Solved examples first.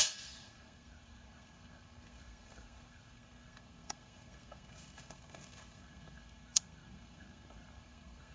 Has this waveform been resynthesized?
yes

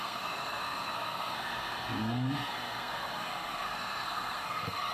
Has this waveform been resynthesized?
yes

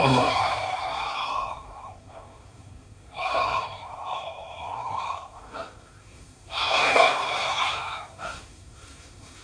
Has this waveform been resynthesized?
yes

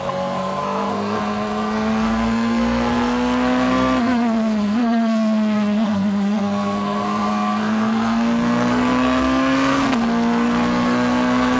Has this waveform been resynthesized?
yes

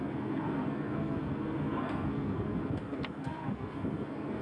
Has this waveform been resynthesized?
yes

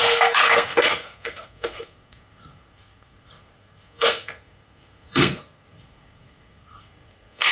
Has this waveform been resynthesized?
yes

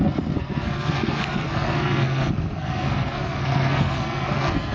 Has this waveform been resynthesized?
yes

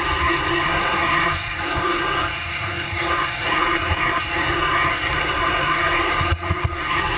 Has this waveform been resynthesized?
yes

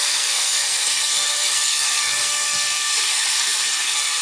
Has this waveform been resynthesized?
yes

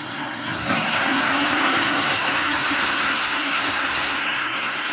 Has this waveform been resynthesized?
yes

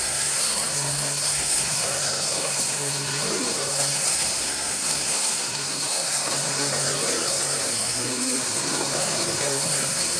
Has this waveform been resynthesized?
yes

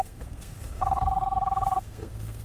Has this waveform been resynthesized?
yes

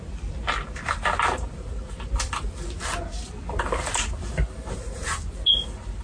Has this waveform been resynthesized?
no